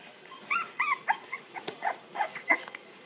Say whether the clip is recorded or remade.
remade